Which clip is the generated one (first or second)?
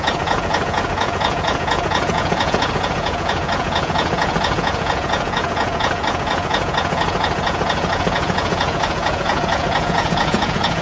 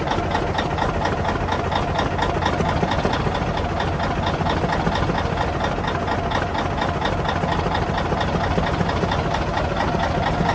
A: first